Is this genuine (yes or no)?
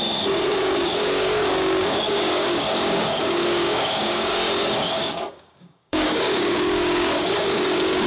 no